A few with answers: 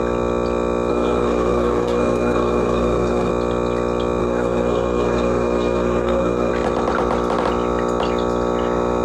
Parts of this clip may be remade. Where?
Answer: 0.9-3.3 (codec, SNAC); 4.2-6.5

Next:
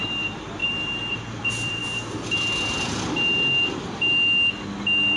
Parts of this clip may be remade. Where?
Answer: 0.0-1.8 (vocoder, BigVGAN v2)

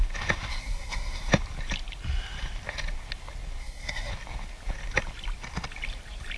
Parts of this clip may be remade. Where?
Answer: 0.5-1.3 (codec, SNAC); 3.6-4.1